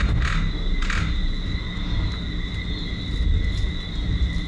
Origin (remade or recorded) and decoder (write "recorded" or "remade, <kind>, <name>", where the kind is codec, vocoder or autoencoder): recorded